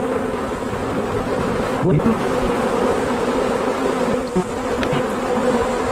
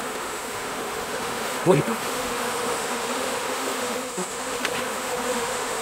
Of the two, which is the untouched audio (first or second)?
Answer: first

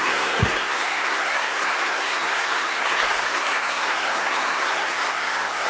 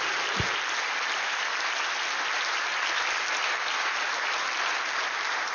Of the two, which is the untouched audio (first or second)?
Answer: second